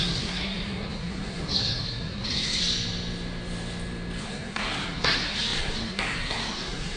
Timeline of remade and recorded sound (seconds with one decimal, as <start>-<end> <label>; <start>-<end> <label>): 0.0-2.6 remade; 2.6-4.2 recorded; 4.2-7.0 remade